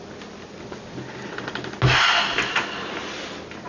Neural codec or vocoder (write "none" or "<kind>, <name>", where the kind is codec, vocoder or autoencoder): none